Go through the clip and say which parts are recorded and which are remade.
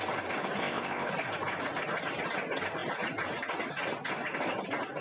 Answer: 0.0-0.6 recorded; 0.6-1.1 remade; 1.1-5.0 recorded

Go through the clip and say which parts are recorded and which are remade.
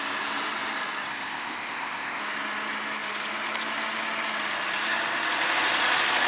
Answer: 0.0-1.1 recorded; 1.1-2.2 remade; 2.2-6.3 recorded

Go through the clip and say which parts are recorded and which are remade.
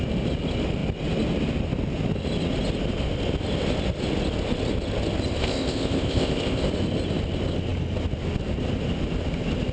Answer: 0.0-5.4 recorded; 5.4-6.7 remade; 6.7-9.7 recorded